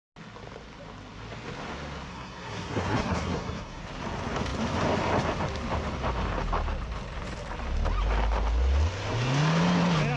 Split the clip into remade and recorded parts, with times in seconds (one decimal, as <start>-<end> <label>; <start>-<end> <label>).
0.0-2.1 recorded; 2.1-3.8 remade; 3.8-10.2 recorded